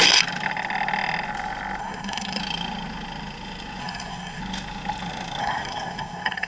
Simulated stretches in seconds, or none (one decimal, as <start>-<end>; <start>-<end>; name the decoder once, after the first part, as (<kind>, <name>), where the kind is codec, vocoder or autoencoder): 1.8-2.4 (codec, SNAC); 3.8-4.4; 5.4-6.5